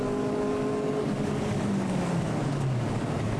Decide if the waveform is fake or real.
fake